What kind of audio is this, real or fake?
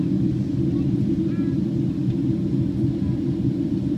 real